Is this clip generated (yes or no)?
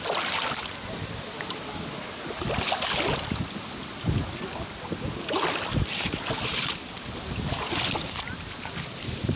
no